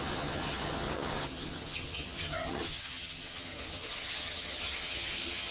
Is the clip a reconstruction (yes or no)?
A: yes